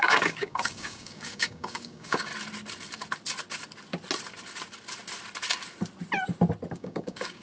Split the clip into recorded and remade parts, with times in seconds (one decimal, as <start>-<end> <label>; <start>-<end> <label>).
0.0-2.3 remade; 2.3-6.7 recorded; 6.7-7.4 remade